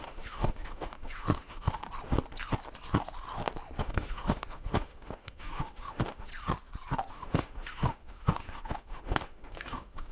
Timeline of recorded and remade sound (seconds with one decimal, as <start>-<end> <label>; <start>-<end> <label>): 0.0-1.8 remade; 1.8-3.8 recorded; 3.8-6.3 remade; 6.3-7.1 recorded; 7.1-10.1 remade